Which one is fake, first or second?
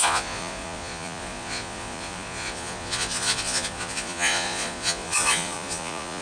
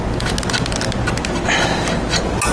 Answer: first